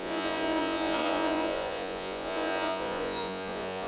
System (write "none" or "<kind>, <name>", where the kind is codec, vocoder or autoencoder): vocoder, Vocos